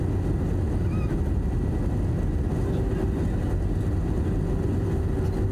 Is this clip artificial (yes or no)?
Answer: no